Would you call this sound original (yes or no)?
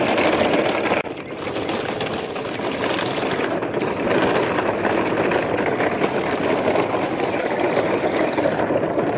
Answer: yes